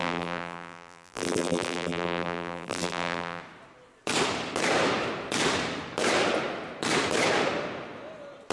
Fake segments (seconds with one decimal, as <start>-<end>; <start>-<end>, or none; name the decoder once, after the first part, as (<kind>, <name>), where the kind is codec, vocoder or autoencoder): 0.0-3.4 (vocoder, BigVGAN v2)